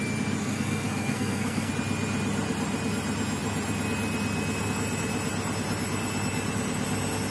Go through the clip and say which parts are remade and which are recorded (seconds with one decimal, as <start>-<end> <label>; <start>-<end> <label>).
0.0-0.4 recorded; 0.4-1.7 remade; 1.7-7.3 recorded